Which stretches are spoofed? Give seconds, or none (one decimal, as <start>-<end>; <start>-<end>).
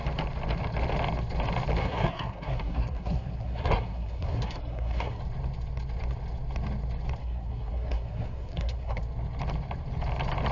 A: 1.8-5.2; 7.2-9.0